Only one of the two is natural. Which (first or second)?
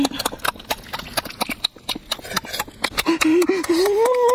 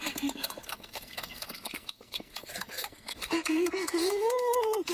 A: first